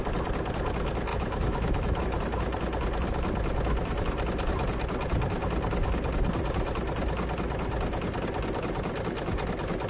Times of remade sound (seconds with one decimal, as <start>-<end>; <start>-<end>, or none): 1.1-2.0